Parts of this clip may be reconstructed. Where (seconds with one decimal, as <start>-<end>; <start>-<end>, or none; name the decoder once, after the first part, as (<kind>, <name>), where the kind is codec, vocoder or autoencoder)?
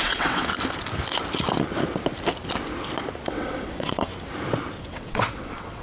0.0-0.5 (vocoder, WaveNeXt); 3.3-4.1; 4.8-5.8